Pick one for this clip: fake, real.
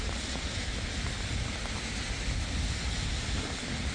real